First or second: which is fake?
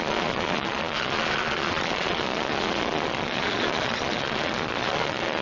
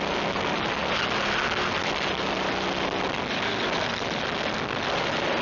first